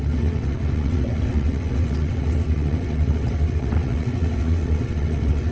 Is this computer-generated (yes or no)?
yes